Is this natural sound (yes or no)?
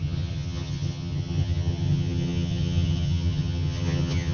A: no